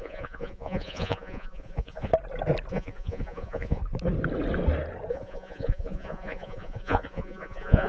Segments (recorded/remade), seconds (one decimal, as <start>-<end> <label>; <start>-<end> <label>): 0.0-2.1 remade; 2.1-2.7 recorded; 2.7-3.8 remade; 3.8-5.1 recorded; 5.1-7.9 remade